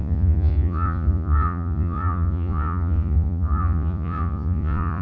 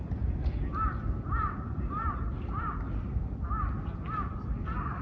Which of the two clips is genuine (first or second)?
second